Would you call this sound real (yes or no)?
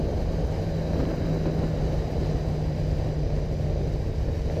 yes